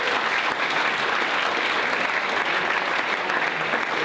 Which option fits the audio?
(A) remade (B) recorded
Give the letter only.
B